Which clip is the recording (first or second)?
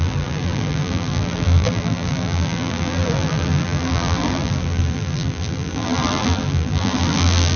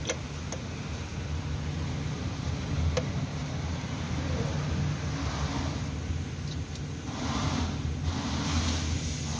second